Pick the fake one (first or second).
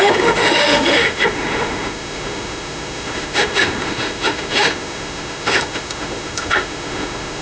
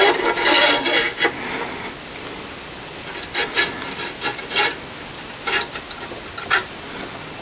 first